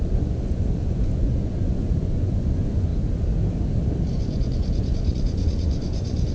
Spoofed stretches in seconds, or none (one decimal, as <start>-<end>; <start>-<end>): 0.0-2.9; 4.1-6.3